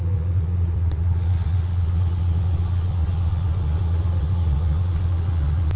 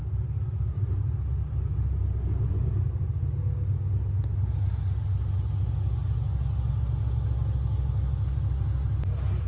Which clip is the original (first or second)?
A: second